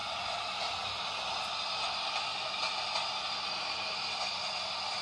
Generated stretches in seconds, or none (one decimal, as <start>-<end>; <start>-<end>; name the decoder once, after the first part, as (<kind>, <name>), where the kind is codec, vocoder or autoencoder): none